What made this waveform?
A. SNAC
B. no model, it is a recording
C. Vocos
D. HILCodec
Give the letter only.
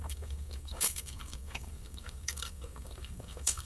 A